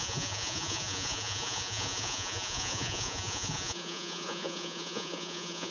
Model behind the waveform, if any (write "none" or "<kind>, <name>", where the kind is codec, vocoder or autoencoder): vocoder, Vocos